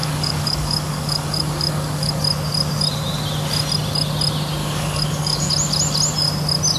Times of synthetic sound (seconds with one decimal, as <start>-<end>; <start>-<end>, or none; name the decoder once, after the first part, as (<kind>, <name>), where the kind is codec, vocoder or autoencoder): 0.0-2.2 (codec, DAC); 4.6-5.5